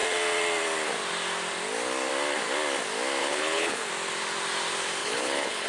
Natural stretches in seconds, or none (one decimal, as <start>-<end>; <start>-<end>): 0.0-3.2; 3.9-5.0